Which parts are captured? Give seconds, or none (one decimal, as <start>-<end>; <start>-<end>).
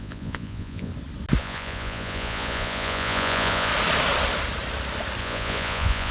0.9-1.4; 3.7-5.2